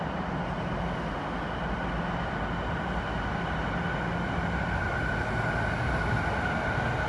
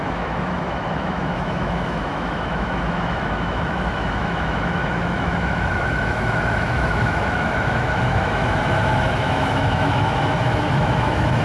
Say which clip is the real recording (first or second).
first